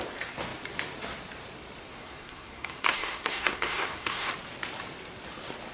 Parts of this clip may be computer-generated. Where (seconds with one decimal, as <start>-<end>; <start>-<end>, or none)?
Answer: 1.8-4.3